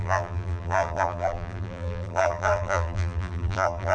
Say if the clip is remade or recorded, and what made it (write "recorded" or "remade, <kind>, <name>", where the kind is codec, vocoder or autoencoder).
remade, vocoder, BigVGAN v2